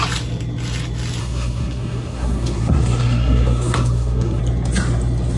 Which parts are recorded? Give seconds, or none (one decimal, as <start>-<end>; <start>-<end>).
0.0-1.2; 4.4-5.4